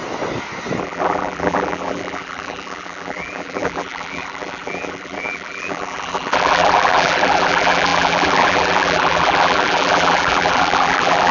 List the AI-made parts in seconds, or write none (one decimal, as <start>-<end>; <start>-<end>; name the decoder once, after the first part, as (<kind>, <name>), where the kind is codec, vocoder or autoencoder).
0.8-11.3 (vocoder, BigVGAN v2)